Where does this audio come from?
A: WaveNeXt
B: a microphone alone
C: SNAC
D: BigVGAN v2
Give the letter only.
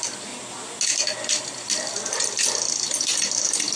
B